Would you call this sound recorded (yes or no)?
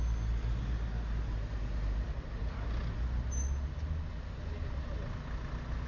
yes